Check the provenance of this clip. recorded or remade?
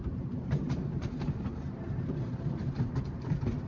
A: remade